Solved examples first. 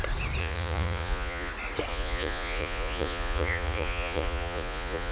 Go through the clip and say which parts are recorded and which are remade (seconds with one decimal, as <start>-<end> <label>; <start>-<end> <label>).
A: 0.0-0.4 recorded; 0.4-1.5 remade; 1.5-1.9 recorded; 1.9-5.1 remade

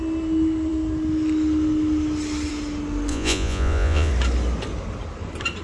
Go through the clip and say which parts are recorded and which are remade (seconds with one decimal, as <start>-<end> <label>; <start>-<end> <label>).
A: 0.0-3.1 recorded; 3.1-4.1 remade; 4.1-5.6 recorded

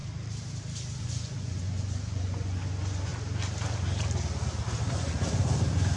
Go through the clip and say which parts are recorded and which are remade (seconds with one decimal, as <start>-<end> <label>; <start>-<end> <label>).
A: 0.0-1.0 recorded; 1.0-3.1 remade; 3.1-4.9 recorded; 4.9-6.0 remade

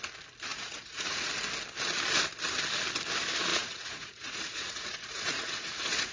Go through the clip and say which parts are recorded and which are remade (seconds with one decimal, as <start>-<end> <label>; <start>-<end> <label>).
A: 0.0-0.5 recorded; 0.5-1.3 remade; 1.3-3.5 recorded; 3.5-6.1 remade

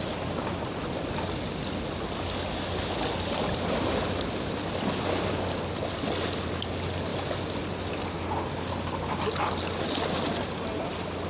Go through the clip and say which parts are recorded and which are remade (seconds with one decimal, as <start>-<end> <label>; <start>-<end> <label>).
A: 0.0-11.3 recorded

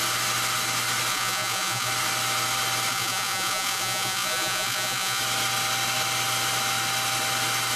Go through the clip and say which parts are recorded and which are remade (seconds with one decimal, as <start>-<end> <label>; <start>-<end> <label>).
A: 0.0-1.1 recorded; 1.1-1.9 remade; 1.9-2.9 recorded; 2.9-5.2 remade; 5.2-7.8 recorded

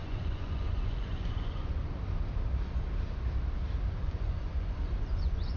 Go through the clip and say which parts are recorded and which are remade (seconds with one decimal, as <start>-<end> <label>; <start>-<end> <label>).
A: 0.0-1.7 remade; 1.7-4.0 recorded; 4.0-5.6 remade

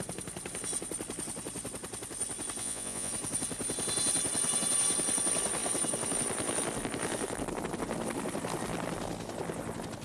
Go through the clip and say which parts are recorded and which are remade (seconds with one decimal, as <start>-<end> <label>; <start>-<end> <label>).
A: 0.0-2.6 recorded; 2.6-3.1 remade; 3.1-10.0 recorded